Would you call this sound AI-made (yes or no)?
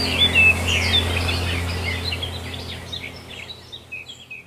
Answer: no